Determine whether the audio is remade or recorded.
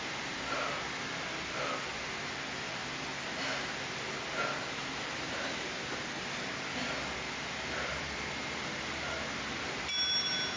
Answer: recorded